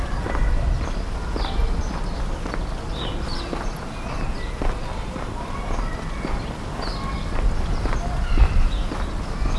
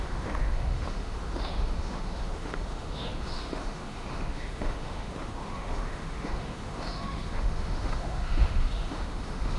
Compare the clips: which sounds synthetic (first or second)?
second